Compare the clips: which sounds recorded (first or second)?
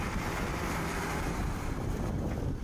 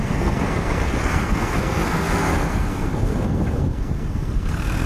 first